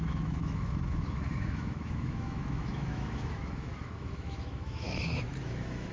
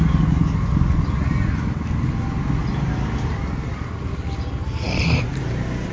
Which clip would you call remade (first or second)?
first